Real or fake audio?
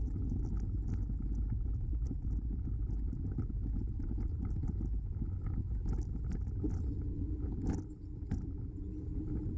real